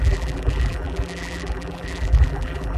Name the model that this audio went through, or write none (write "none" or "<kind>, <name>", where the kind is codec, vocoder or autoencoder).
vocoder, BigVGAN v2